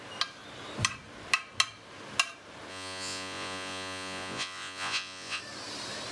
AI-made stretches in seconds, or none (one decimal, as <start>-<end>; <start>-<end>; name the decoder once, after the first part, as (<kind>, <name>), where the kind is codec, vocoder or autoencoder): 2.7-5.4 (vocoder, Vocos)